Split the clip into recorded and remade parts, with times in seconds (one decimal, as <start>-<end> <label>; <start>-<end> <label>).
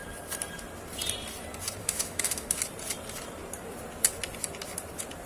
0.0-1.8 recorded; 1.8-2.6 remade; 2.6-5.3 recorded